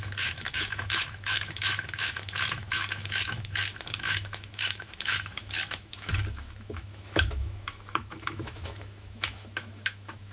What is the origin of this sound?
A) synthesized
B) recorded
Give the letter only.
A